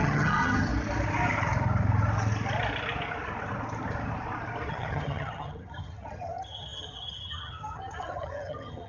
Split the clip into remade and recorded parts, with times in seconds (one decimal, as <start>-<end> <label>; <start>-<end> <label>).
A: 0.0-0.7 remade; 0.7-4.7 recorded; 4.7-8.9 remade